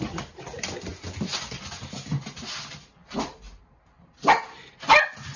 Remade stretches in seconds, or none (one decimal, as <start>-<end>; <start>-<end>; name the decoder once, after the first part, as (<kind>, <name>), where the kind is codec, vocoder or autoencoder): none